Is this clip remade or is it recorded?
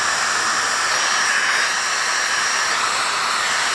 recorded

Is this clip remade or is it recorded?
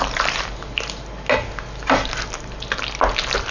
recorded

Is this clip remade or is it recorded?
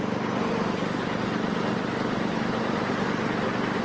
recorded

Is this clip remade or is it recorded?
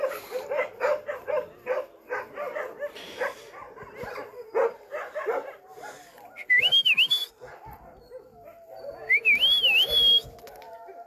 recorded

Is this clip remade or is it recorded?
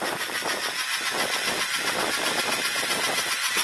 recorded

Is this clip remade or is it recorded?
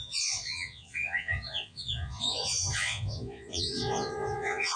remade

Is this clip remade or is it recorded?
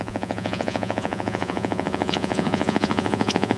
remade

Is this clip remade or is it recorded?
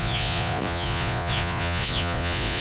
remade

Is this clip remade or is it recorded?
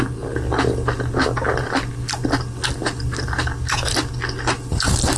recorded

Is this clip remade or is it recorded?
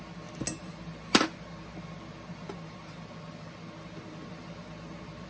recorded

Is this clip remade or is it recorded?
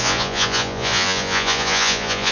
remade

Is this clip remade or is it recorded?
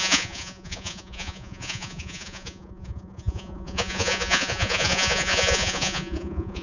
remade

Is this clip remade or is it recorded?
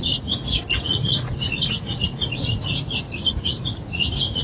remade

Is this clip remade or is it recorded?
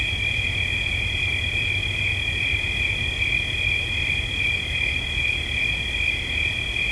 recorded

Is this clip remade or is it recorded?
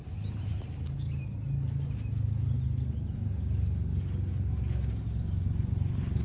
recorded